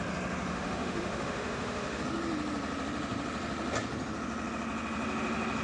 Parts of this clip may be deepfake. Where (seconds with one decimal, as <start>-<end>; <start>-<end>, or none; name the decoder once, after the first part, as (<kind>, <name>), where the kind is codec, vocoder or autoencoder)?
0.5-2.0 (autoencoder, DAC-VAE)